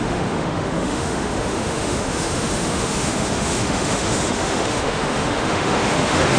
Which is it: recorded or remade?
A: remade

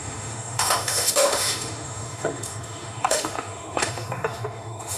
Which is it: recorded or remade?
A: remade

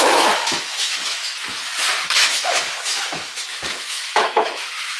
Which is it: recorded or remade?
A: remade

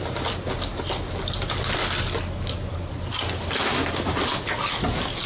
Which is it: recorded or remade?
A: recorded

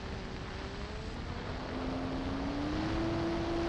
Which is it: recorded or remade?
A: recorded